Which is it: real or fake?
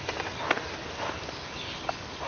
real